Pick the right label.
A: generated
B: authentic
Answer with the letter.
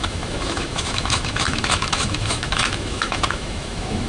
A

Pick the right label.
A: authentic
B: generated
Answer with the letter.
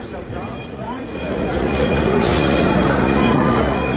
B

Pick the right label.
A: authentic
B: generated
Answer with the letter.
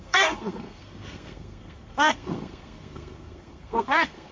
B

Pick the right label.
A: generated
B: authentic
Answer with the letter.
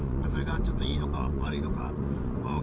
A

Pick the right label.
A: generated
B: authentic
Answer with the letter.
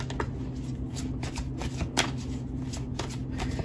B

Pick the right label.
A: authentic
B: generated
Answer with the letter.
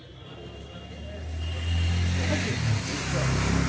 A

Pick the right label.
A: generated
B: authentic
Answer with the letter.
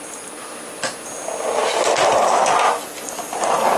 B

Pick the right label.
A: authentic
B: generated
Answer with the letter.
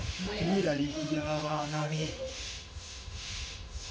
B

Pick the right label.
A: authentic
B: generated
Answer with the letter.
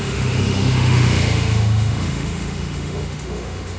B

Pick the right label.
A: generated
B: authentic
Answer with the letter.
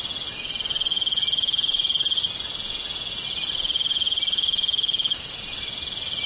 B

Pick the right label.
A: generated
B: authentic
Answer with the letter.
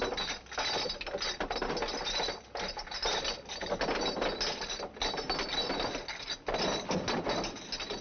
B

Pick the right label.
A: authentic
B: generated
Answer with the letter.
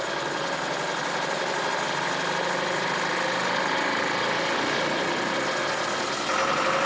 A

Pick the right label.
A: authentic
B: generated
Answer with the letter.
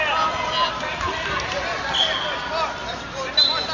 A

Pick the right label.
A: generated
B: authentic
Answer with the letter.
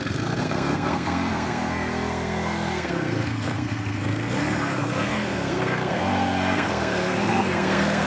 A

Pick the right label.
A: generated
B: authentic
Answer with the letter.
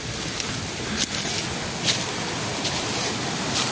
B